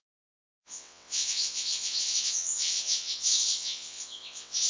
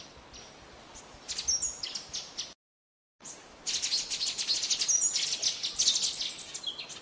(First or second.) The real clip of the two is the second